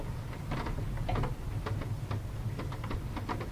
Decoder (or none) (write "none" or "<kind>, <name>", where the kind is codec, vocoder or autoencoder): none